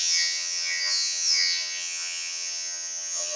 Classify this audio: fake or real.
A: fake